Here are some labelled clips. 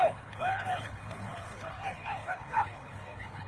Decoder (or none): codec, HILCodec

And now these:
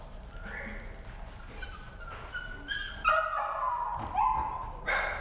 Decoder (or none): none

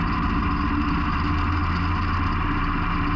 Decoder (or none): none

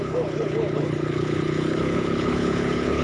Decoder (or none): codec, HILCodec